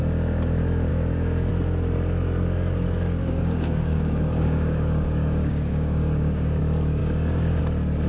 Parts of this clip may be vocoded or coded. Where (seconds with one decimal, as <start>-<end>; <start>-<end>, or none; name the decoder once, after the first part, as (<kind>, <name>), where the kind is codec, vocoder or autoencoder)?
0.9-1.5 (codec, DAC); 3.2-6.6; 7.0-7.6